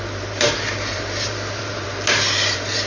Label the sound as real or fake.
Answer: fake